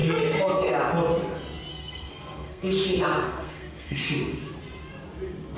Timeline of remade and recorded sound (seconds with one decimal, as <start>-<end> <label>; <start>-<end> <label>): 0.0-0.7 remade; 0.7-1.7 recorded; 1.7-4.0 remade; 4.0-5.6 recorded